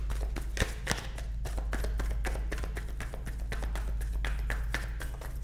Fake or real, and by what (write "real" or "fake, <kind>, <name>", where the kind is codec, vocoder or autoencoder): real